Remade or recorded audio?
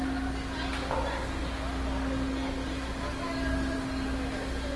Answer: recorded